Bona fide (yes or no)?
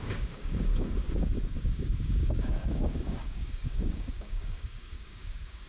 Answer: no